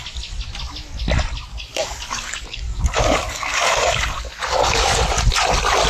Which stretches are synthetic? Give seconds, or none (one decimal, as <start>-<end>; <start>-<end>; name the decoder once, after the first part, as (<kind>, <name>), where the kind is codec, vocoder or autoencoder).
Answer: 1.5-5.0 (codec, DAC)

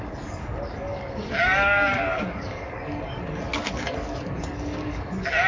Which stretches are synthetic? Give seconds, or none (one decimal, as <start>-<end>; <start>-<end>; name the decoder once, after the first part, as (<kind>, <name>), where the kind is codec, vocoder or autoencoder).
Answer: 0.0-5.5 (codec, DAC)

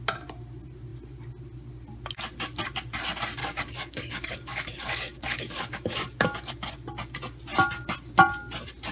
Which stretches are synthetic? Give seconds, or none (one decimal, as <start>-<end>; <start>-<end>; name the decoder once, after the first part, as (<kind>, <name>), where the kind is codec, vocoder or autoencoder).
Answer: 3.4-6.7 (codec, DAC)

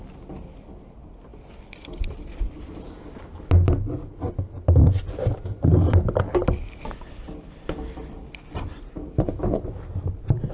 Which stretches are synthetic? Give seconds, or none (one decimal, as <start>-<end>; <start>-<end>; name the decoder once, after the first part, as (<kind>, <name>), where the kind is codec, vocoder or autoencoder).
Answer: none

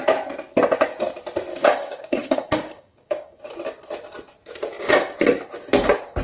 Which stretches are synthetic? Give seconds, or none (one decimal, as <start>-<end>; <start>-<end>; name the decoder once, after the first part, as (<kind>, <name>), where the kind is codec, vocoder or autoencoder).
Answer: 1.5-3.4 (codec, DAC)

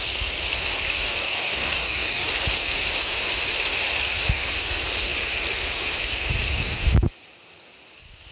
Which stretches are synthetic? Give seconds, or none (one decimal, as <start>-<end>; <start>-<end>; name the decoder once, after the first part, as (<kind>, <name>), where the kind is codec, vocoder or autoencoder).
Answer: 1.2-2.3 (codec, DAC)

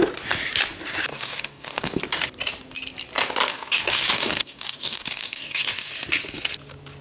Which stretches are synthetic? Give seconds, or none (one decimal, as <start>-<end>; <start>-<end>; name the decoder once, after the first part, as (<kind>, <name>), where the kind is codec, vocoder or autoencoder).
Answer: 1.1-2.0 (codec, DAC); 3.5-5.9

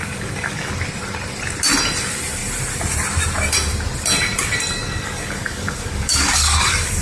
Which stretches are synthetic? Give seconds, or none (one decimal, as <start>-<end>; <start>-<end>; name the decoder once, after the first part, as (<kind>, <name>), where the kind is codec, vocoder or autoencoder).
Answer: 0.0-0.7 (codec, DAC); 4.8-7.0